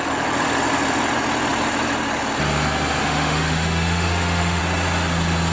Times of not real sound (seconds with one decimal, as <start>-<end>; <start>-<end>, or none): 3.0-4.6